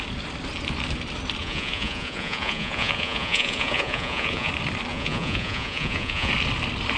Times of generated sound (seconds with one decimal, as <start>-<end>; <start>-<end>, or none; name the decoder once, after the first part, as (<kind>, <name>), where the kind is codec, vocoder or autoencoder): 1.4-4.5 (vocoder, Vocos); 4.9-6.3